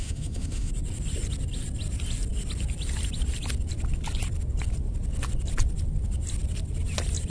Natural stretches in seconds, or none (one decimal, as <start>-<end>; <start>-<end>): 0.7-7.3